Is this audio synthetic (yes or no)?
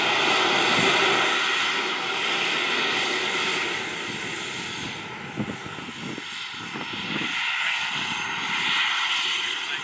no